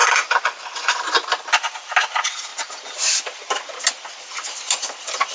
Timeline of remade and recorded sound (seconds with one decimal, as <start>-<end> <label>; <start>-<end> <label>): 0.0-2.5 recorded; 2.5-3.1 remade; 3.1-5.3 recorded